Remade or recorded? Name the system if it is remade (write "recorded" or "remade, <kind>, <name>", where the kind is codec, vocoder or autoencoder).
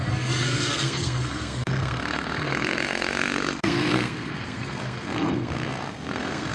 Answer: remade, codec, SNAC